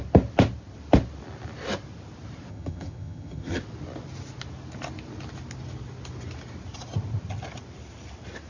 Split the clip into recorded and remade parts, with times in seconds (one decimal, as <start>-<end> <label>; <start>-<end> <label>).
0.0-2.5 recorded; 2.5-3.6 remade; 3.6-8.5 recorded